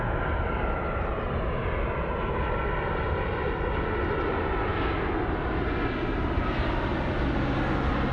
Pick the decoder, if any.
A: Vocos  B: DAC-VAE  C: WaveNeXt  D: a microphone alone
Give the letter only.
D